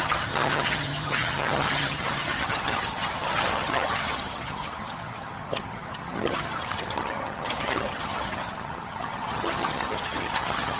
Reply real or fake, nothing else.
fake